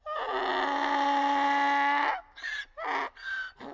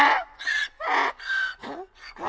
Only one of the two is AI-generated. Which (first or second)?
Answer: second